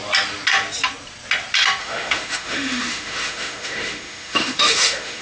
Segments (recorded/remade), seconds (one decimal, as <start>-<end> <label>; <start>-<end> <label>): 0.0-1.8 recorded; 1.8-5.2 remade

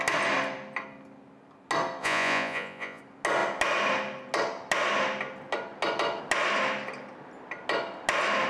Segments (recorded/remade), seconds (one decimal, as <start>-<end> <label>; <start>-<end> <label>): 0.0-2.0 recorded; 2.0-3.0 remade; 3.0-8.5 recorded

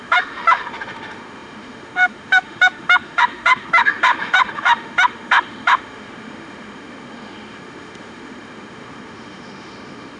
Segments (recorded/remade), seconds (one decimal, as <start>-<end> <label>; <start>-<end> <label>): 0.0-10.2 remade

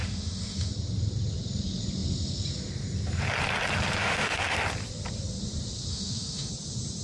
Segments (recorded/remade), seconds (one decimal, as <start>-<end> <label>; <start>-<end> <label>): 0.0-0.7 remade; 0.7-4.0 recorded; 4.0-4.6 remade; 4.6-5.9 recorded; 5.9-6.5 remade; 6.5-7.0 recorded

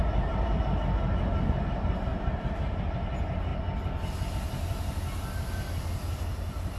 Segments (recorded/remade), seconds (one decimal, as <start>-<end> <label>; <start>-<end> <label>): 0.0-0.6 remade; 0.6-2.1 recorded; 2.1-2.8 remade; 2.8-6.8 recorded